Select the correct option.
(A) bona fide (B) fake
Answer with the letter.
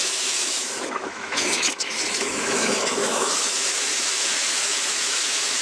B